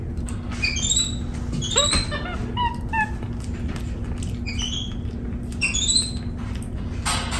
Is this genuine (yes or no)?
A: yes